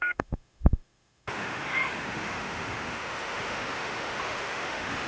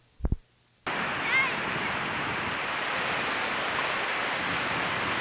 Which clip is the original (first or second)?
second